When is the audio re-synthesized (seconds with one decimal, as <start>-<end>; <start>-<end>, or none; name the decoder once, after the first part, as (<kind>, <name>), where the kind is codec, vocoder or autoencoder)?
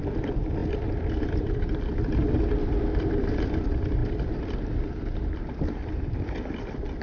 0.0-0.6 (vocoder, BigVGAN v2); 3.0-4.0; 4.7-5.8; 6.3-7.0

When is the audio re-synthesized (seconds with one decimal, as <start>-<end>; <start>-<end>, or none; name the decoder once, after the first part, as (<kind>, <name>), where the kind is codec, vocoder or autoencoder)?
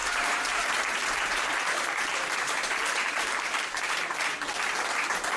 0.0-0.7 (vocoder, BigVGAN v2); 2.1-4.2